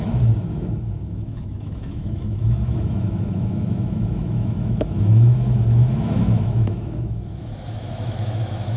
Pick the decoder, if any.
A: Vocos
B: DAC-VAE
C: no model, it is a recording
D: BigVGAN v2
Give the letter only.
B